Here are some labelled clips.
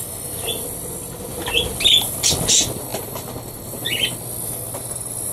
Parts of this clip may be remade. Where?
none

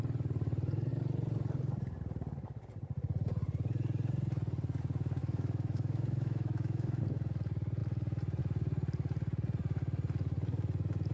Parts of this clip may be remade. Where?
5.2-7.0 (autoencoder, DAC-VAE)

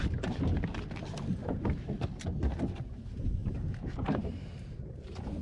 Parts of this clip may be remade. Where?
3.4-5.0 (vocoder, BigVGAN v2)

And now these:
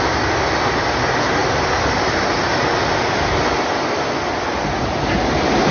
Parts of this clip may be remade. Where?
none

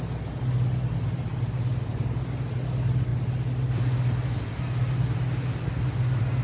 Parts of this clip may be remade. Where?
none